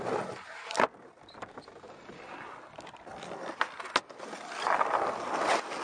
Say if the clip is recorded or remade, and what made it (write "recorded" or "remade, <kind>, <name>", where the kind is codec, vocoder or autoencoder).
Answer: recorded